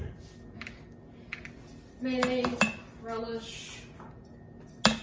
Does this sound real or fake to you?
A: real